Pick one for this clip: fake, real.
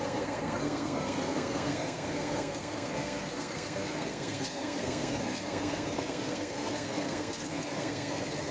fake